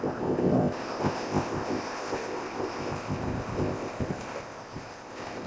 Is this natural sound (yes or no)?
no